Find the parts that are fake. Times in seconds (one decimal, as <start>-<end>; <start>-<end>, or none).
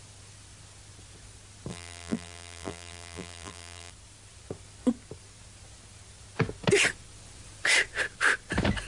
1.7-3.9